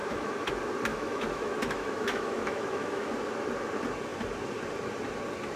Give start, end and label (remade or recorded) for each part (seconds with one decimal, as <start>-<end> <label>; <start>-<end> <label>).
0.0-0.5 remade; 0.5-0.9 recorded; 0.9-3.1 remade; 3.1-5.6 recorded